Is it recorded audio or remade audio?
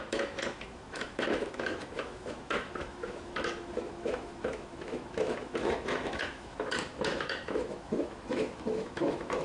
remade